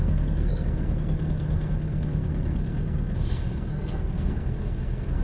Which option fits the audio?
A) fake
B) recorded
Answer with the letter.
A